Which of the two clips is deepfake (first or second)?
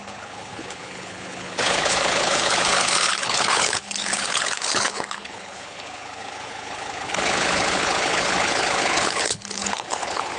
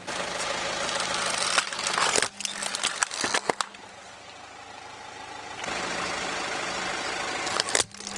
first